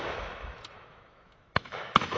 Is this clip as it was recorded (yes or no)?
no